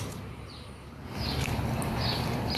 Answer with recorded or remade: recorded